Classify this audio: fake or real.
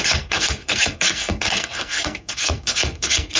fake